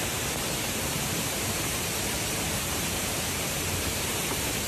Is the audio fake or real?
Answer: fake